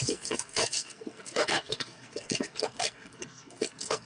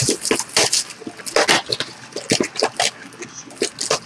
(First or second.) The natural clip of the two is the second